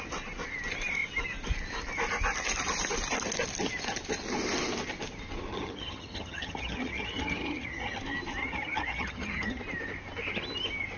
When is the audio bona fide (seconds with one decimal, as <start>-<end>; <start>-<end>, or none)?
0.0-5.5; 8.0-8.4; 9.6-11.0